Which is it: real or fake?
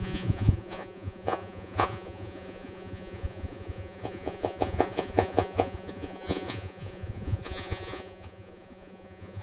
fake